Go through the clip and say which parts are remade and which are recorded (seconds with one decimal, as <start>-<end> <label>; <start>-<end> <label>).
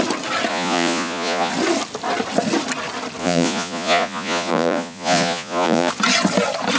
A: 0.0-0.5 recorded; 0.5-1.5 remade; 1.5-3.2 recorded; 3.2-5.9 remade; 5.9-6.8 recorded